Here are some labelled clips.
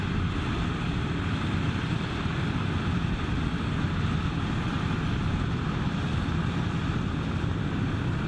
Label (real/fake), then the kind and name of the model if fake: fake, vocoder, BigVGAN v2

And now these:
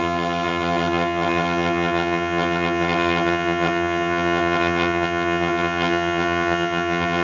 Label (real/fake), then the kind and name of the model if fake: fake, vocoder, HiFi-GAN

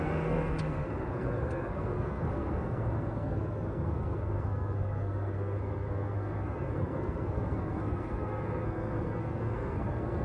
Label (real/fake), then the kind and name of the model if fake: fake, codec, SNAC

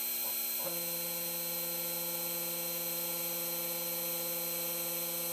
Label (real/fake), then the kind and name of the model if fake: real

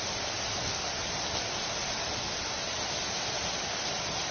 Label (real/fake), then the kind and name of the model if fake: real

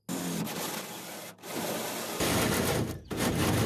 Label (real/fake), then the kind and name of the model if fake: real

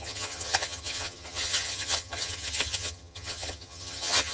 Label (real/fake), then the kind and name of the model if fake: fake, vocoder, HiFi-GAN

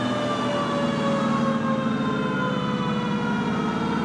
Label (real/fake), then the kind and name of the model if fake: real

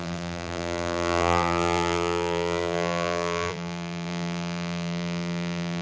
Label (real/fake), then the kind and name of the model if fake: fake, vocoder, BigVGAN v2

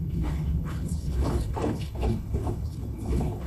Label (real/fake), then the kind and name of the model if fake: fake, codec, HILCodec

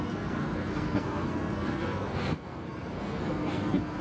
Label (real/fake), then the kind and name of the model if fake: fake, codec, SNAC